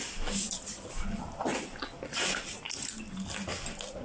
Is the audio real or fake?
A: real